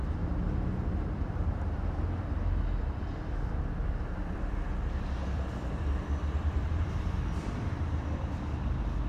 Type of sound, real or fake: fake